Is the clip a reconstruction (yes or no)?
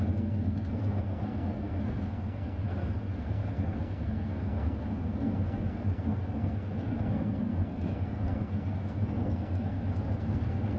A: yes